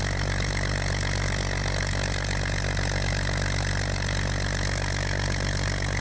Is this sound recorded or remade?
recorded